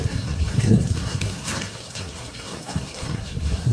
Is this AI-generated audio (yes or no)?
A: yes